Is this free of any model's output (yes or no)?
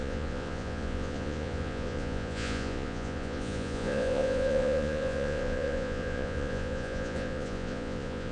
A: no